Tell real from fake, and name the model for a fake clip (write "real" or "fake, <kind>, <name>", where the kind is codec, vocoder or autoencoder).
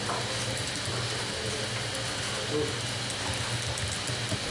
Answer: real